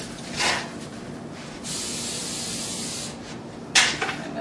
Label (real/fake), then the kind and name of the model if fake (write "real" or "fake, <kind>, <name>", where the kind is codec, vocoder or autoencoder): real